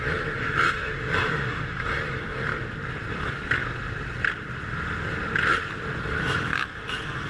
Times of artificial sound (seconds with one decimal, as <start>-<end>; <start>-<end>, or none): 0.0-2.5; 3.1-3.6; 6.0-6.5